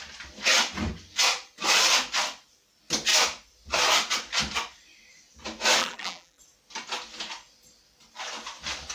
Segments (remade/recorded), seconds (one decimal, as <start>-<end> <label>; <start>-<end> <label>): 0.0-5.8 recorded; 5.8-6.4 remade; 6.4-8.9 recorded